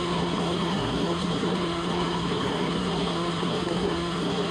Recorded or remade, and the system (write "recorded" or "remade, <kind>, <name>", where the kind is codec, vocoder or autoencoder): remade, codec, SNAC